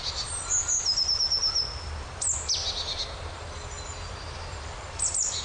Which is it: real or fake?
real